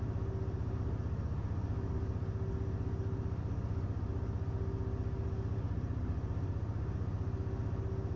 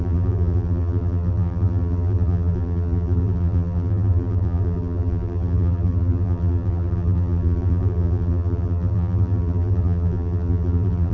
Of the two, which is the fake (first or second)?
second